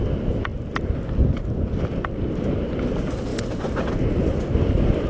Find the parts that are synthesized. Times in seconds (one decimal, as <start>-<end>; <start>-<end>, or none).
none